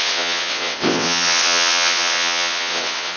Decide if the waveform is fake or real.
fake